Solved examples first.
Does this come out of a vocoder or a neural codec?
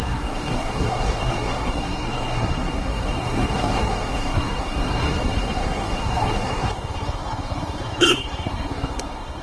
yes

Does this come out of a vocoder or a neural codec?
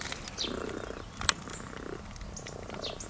no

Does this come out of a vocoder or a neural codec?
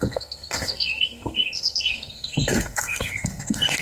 yes